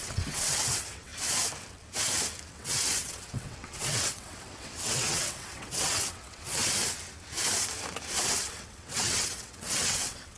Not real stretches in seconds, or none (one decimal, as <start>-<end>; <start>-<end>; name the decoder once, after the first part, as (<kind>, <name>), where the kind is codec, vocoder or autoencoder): 0.0-1.1 (vocoder, WaveNeXt); 2.5-6.6; 8.3-10.4

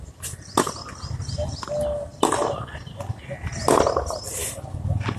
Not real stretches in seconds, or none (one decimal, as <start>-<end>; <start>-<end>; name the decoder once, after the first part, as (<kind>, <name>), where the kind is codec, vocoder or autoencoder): none

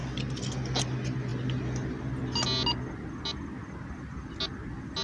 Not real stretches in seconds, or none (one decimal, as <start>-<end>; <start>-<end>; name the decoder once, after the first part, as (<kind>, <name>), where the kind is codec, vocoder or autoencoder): none

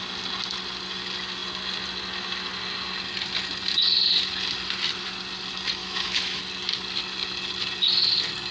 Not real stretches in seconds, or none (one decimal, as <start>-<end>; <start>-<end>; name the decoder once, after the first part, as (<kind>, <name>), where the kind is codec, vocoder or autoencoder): 5.8-6.4 (autoencoder, DAC-VAE)

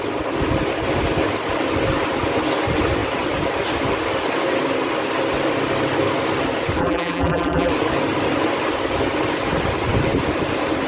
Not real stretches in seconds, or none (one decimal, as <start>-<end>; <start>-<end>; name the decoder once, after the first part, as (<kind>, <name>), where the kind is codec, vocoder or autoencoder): 6.8-7.7 (vocoder, BigVGAN v2)